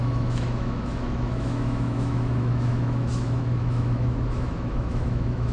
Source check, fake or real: fake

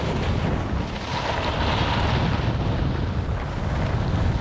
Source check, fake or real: real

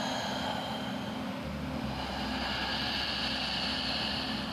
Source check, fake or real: real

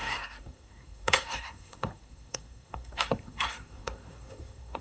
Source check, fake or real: fake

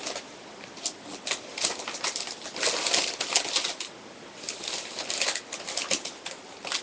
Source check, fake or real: real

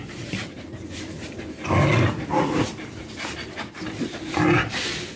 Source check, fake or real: real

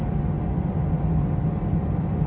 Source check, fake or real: real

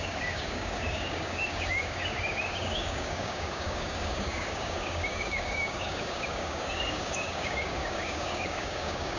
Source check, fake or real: fake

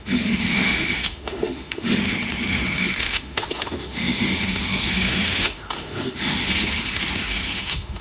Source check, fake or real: fake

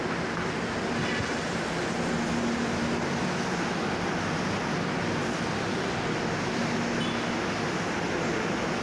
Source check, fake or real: real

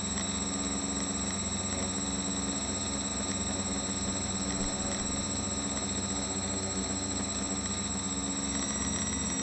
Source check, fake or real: real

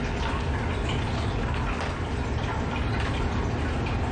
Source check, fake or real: real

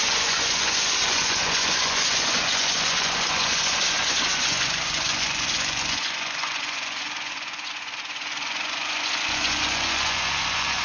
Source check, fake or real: fake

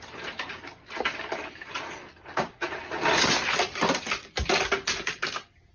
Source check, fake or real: real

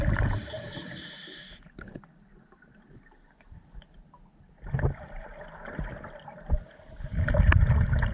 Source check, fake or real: real